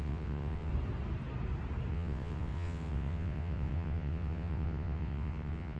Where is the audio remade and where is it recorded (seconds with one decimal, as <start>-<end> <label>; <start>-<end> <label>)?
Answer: 0.0-0.7 remade; 0.7-1.9 recorded; 1.9-5.8 remade